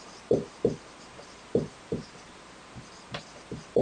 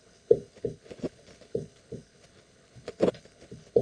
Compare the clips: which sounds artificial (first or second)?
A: second